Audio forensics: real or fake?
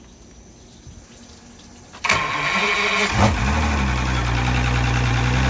real